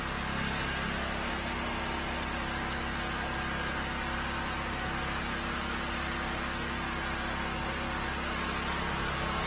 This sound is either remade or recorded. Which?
recorded